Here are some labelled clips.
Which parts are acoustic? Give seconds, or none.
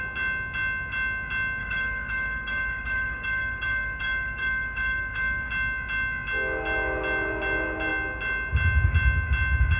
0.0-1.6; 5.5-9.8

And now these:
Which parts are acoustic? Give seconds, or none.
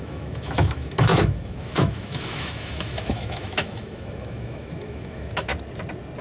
5.5-6.2